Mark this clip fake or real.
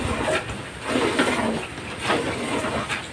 real